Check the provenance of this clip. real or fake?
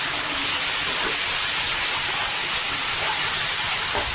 real